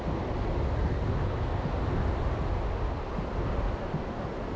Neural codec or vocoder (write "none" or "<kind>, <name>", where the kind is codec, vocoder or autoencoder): none